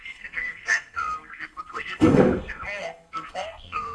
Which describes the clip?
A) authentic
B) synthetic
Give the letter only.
B